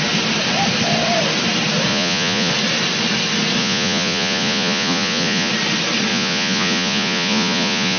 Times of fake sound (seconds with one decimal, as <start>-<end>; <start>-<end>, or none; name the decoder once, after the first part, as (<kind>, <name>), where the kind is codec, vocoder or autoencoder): 1.9-2.5 (vocoder, Vocos); 3.6-5.5; 6.1-8.0